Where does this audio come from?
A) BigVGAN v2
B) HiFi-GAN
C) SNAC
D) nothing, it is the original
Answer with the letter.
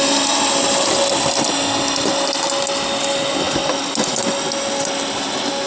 D